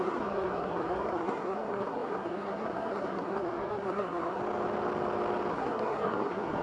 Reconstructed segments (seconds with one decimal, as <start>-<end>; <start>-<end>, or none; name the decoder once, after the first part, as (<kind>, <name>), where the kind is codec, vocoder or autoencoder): 0.0-4.4 (codec, SNAC); 5.5-6.6